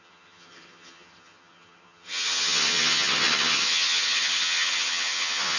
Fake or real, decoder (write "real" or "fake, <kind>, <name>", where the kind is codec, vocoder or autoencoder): fake, vocoder, HiFi-GAN